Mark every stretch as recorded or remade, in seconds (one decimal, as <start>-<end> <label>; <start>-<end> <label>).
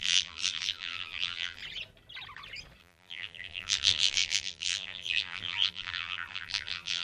0.0-1.6 remade; 1.6-2.8 recorded; 2.8-7.0 remade